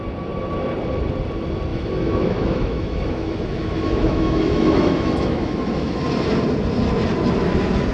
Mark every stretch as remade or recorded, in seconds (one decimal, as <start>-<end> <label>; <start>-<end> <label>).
0.0-1.7 recorded; 1.7-6.0 remade; 6.0-7.9 recorded